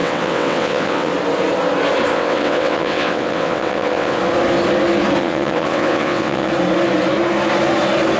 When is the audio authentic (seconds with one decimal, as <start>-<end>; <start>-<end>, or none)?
1.1-2.1; 4.2-5.2; 6.5-8.2